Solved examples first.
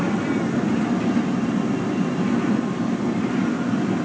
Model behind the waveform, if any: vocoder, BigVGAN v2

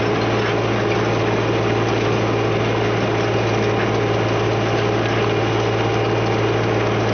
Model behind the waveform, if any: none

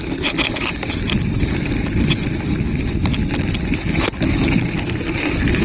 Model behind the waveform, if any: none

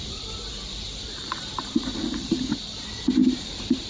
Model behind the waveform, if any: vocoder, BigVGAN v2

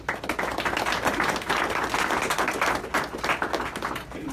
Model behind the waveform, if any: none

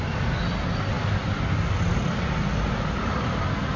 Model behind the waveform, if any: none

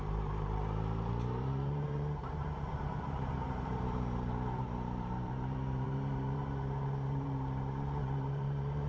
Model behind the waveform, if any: vocoder, BigVGAN v2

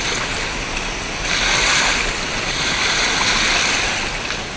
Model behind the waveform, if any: none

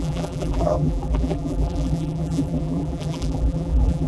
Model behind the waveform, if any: vocoder, BigVGAN v2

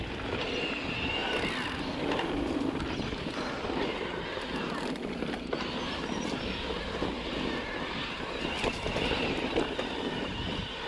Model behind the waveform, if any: vocoder, BigVGAN v2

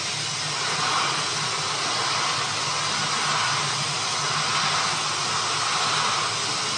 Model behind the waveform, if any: none